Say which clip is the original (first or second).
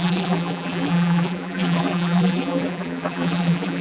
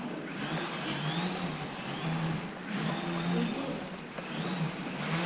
second